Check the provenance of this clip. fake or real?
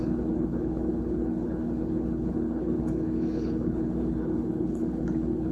fake